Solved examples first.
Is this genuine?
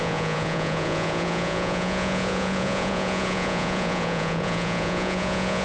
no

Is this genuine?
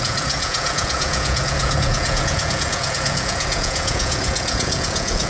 no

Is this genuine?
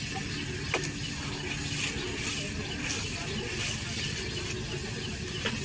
yes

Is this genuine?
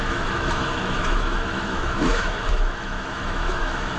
no